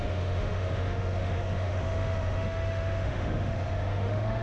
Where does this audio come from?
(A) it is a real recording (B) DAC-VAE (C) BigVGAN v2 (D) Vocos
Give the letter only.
B